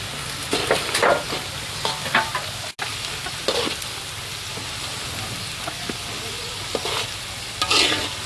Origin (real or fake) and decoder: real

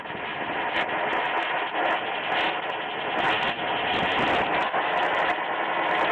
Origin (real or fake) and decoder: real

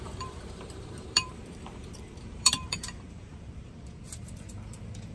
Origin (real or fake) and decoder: fake, vocoder, BigVGAN v2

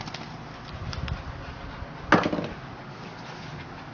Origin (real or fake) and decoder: real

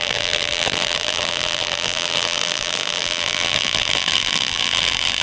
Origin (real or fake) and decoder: fake, vocoder, BigVGAN v2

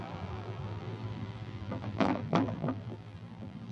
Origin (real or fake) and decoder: fake, vocoder, BigVGAN v2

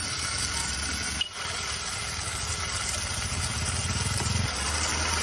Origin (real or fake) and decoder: real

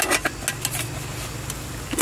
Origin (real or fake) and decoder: real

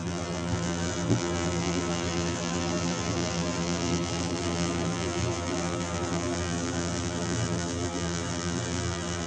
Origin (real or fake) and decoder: fake, vocoder, BigVGAN v2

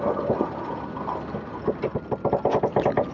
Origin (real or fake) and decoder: real